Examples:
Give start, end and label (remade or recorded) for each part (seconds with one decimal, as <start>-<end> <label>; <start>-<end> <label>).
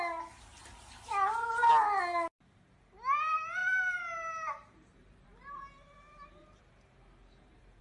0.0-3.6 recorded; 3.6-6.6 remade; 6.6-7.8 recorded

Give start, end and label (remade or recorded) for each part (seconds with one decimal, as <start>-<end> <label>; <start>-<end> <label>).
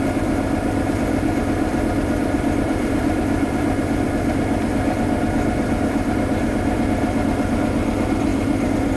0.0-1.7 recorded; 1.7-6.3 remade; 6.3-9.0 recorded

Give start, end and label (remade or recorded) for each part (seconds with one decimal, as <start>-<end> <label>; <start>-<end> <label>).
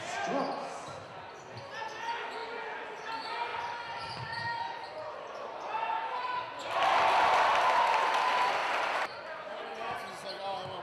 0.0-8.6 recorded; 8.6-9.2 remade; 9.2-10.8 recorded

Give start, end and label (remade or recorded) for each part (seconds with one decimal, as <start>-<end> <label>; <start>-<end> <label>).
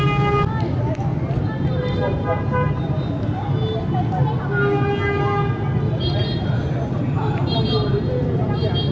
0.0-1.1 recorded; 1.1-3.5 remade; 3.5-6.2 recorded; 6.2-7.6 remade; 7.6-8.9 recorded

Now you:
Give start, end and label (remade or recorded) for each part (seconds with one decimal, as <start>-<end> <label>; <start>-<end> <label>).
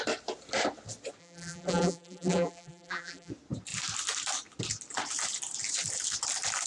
0.0-1.2 recorded; 1.2-3.3 remade; 3.3-6.7 recorded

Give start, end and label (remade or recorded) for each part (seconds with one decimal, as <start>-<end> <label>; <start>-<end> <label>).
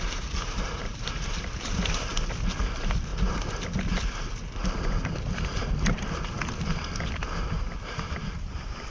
0.0-2.1 remade; 2.1-2.6 recorded; 2.6-3.1 remade; 3.1-7.5 recorded; 7.5-8.9 remade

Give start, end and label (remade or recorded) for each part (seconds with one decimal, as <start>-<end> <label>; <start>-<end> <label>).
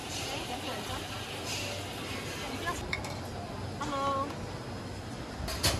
0.0-0.6 remade; 0.6-5.8 recorded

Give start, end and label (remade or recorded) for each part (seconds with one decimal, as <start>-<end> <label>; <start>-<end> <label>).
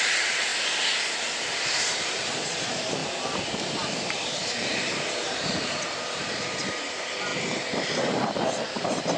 0.0-0.5 remade; 0.5-1.4 recorded; 1.4-7.3 remade; 7.3-8.0 recorded; 8.0-9.2 remade